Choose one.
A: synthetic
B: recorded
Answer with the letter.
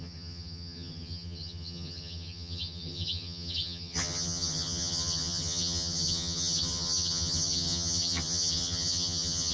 A